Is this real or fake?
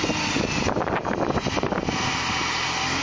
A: real